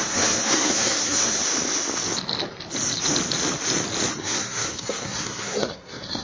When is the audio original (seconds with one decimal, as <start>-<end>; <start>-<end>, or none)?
1.4-4.1